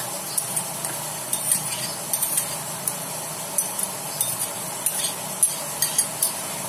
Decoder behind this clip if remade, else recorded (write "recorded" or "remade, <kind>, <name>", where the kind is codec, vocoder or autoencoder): recorded